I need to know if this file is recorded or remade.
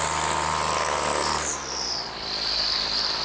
recorded